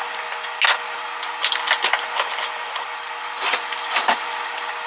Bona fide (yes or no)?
yes